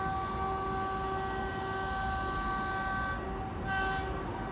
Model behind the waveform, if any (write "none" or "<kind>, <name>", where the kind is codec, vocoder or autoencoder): none